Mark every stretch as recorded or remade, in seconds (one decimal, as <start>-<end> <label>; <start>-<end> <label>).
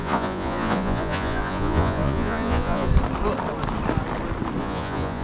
0.0-2.9 remade; 2.9-4.6 recorded; 4.6-5.2 remade